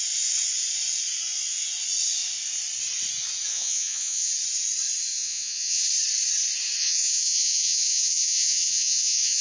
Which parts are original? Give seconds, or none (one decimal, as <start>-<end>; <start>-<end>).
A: 0.0-3.5; 4.3-5.1; 5.8-6.8